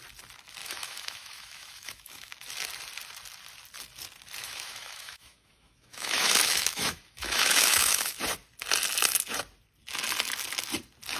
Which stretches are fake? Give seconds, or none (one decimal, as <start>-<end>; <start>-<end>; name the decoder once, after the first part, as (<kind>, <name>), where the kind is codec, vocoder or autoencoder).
0.6-2.3 (autoencoder, DAC-VAE); 4.4-8.2